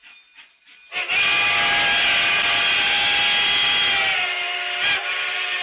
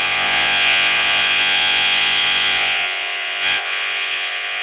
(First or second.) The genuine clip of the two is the first